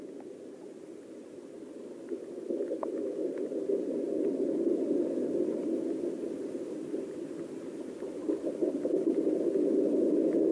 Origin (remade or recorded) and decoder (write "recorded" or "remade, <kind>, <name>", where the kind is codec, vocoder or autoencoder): recorded